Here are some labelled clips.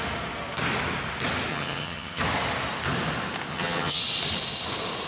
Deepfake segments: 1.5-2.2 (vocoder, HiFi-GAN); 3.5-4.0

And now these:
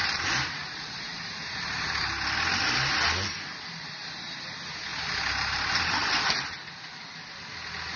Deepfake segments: 0.0-2.1 (vocoder, BigVGAN v2); 4.9-6.3